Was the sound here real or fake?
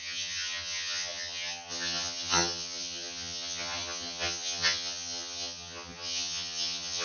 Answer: fake